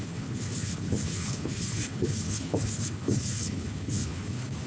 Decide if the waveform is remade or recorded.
remade